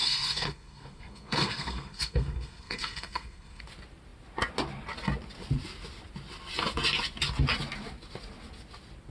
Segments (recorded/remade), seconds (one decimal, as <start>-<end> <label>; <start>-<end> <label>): 0.0-3.6 remade; 3.6-9.1 recorded